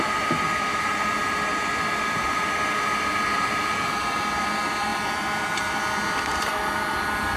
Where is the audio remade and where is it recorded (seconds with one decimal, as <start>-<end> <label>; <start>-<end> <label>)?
0.0-4.9 remade; 4.9-6.1 recorded; 6.1-7.4 remade